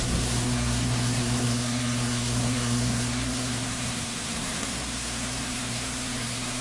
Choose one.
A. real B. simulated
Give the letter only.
B